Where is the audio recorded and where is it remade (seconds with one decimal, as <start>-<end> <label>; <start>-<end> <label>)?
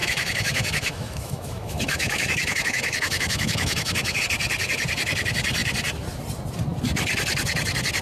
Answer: 0.0-4.2 remade; 4.2-8.0 recorded